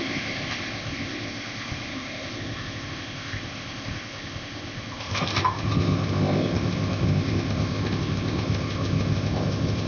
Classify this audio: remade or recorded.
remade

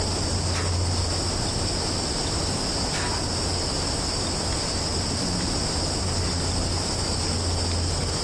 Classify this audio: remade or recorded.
recorded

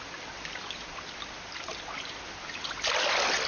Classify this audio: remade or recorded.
recorded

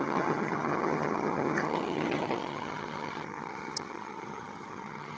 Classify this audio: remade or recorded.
remade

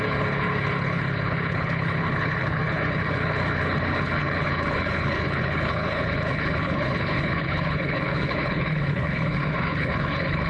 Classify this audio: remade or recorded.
remade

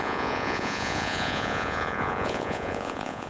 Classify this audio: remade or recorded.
remade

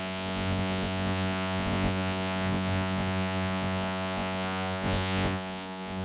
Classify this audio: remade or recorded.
remade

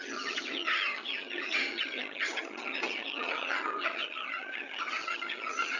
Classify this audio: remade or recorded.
remade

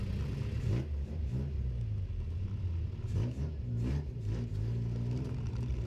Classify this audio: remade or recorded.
recorded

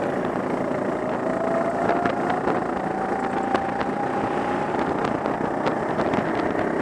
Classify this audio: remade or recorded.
recorded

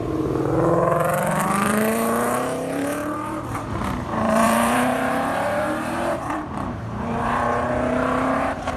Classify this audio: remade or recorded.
remade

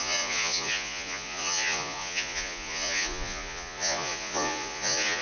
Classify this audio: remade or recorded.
remade